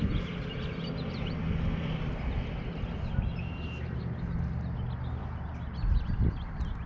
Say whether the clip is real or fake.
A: real